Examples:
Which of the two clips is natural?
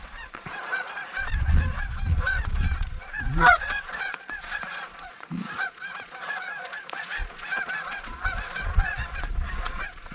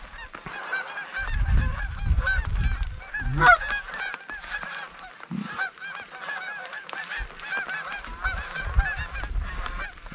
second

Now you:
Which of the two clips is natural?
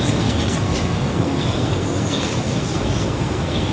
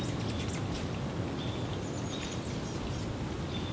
second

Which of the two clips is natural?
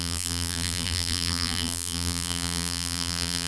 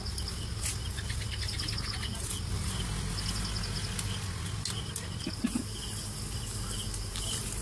second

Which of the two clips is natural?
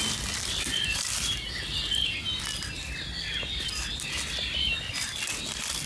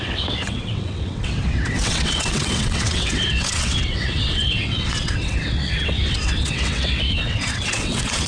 first